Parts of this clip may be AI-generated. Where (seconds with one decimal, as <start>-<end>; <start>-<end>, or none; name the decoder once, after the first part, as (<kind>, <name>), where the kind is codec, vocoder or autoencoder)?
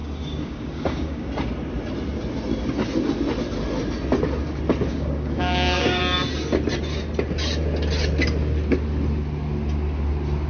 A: 0.0-1.3 (codec, DAC); 4.9-6.0